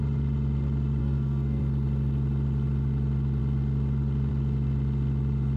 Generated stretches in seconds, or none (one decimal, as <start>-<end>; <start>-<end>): 1.0-1.6